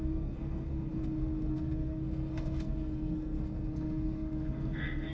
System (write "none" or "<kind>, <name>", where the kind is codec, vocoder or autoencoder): codec, SNAC